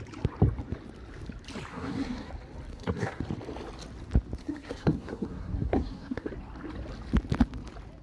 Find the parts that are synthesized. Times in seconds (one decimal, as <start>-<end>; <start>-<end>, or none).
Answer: 1.7-2.3; 2.7-3.2; 4.4-6.3